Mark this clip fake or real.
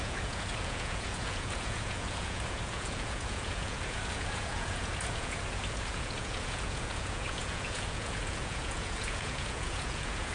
fake